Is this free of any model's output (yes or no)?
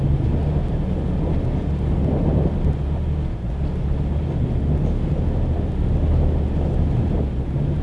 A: yes